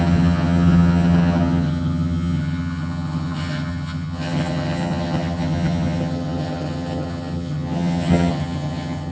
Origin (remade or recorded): remade